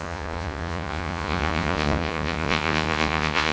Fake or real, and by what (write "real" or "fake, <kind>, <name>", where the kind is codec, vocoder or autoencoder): fake, vocoder, Vocos